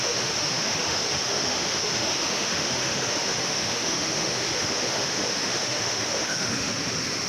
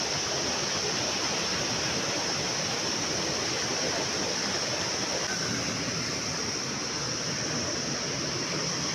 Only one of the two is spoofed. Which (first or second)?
first